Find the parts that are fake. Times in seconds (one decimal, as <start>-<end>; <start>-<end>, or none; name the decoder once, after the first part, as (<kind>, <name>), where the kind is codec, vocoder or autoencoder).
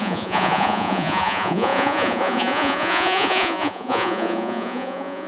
0.0-5.3 (vocoder, Vocos)